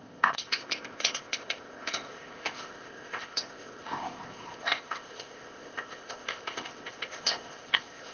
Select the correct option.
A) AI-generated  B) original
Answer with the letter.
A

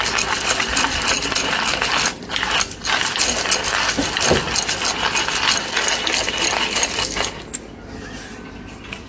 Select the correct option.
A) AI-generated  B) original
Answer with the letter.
B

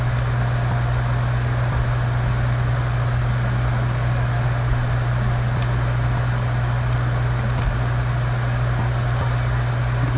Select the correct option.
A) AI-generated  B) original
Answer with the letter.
B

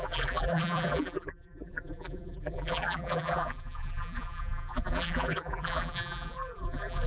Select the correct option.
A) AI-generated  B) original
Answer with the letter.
A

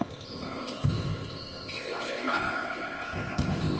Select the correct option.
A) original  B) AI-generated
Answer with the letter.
B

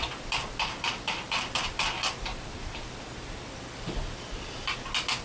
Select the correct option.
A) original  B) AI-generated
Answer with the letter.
A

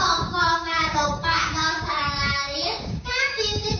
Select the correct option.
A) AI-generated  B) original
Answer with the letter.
A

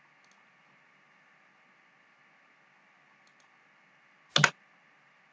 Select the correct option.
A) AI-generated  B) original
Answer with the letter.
B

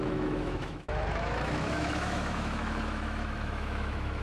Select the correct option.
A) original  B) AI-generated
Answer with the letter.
B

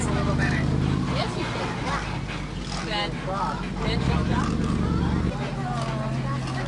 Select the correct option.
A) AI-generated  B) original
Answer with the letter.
B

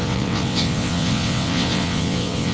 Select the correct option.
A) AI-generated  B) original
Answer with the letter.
A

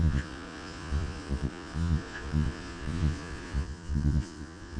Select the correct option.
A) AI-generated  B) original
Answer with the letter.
A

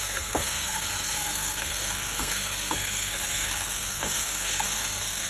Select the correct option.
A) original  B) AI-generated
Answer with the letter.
B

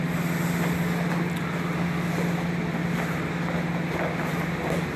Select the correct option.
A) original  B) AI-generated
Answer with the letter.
A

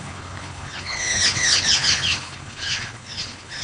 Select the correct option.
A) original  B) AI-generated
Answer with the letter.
B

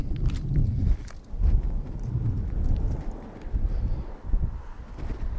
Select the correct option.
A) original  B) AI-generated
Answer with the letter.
A